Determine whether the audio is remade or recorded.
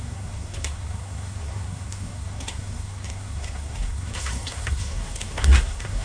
remade